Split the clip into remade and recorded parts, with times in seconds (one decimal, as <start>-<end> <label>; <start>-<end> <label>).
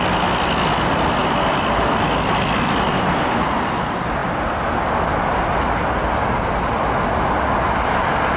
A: 0.0-8.4 recorded